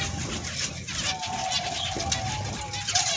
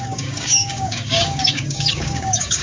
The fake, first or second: second